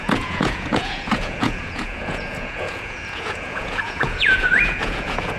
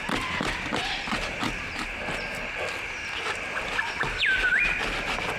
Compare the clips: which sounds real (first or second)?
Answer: second